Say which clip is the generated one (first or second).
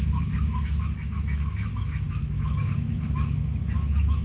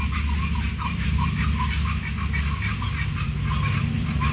first